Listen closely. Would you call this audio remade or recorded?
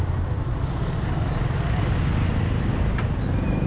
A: recorded